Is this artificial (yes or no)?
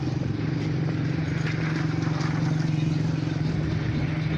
no